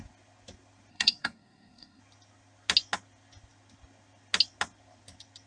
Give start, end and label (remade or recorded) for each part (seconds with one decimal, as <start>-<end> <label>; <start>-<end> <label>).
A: 0.0-0.9 recorded; 0.9-2.0 remade; 2.0-5.5 recorded